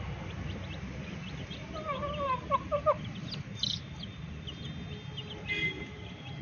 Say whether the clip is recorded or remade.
recorded